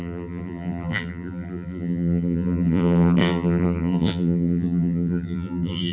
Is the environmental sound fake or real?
fake